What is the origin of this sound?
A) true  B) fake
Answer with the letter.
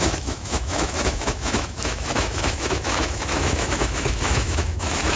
B